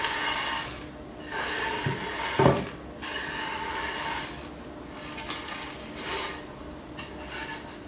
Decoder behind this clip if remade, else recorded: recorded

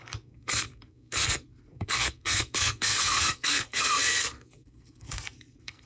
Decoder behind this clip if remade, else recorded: remade, codec, SNAC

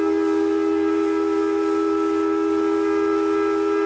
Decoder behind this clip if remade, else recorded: recorded